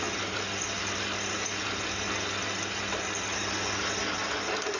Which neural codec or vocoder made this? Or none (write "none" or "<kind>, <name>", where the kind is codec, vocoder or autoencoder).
none